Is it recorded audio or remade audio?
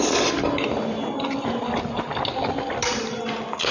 recorded